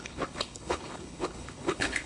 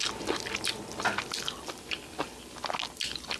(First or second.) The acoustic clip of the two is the second